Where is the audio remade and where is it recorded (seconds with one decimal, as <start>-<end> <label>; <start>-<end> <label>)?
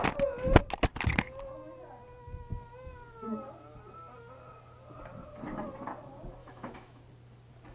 0.0-6.4 recorded; 6.4-7.0 remade; 7.0-7.7 recorded